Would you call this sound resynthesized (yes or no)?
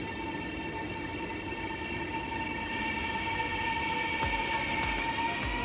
no